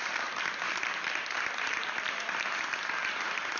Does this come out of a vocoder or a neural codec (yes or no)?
no